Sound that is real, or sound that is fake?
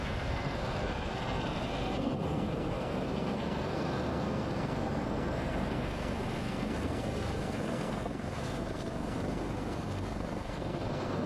fake